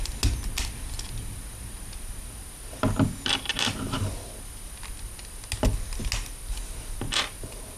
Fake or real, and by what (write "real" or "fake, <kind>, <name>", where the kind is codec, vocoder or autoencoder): real